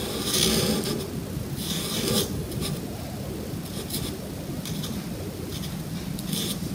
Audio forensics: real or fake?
real